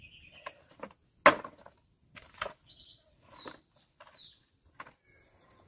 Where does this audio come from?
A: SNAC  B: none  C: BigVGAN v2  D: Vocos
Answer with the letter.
B